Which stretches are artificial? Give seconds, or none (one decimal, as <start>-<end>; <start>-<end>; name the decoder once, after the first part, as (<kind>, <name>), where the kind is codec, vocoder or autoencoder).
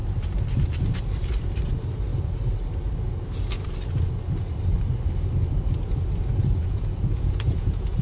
6.6-8.0 (vocoder, Vocos)